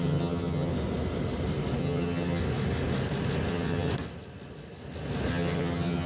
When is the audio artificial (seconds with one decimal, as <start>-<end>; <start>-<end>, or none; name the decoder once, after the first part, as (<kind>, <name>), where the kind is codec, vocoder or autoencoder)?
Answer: 0.0-0.7 (vocoder, HiFi-GAN); 1.8-2.4; 3.5-3.9; 5.3-6.1